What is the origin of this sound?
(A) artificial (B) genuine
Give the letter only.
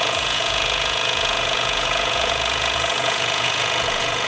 A